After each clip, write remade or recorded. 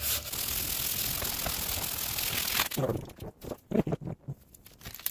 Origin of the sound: recorded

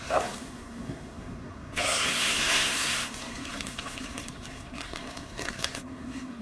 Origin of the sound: remade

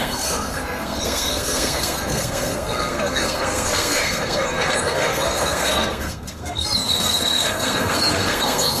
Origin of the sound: remade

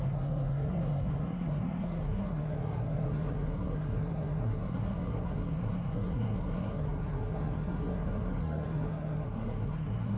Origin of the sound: remade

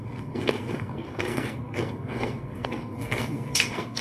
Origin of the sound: remade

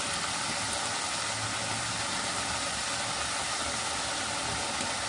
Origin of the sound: recorded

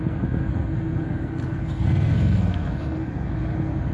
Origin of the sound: remade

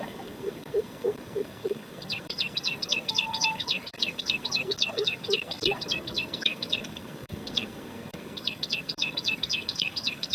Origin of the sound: remade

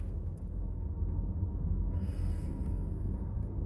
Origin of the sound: remade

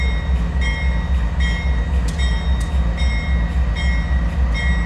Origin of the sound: recorded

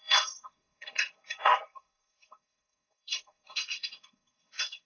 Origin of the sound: remade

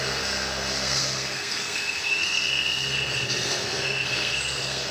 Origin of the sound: remade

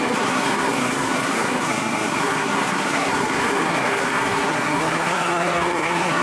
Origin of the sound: remade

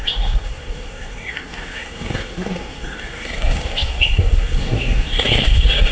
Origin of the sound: remade